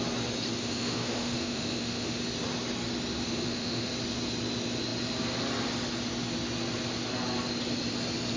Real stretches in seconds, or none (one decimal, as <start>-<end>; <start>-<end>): 0.0-0.6; 2.2-3.3; 3.9-8.4